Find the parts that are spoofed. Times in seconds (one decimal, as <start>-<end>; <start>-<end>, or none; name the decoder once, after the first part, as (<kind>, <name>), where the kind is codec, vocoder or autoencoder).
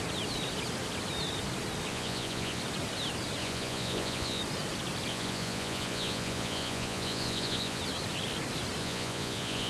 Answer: 1.9-2.6 (vocoder, Vocos); 3.4-4.4; 5.1-7.8; 8.8-9.7